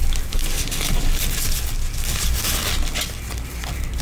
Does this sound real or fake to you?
real